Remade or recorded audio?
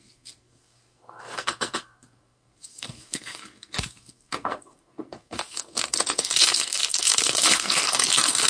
remade